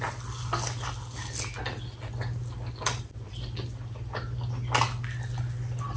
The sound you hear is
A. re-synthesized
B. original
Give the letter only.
B